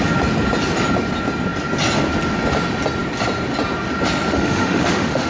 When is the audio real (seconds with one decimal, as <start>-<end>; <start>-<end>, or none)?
0.0-4.3